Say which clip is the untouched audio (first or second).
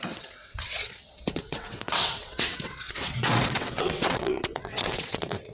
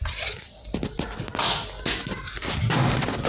second